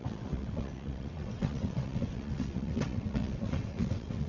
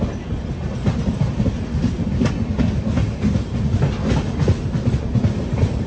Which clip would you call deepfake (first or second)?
first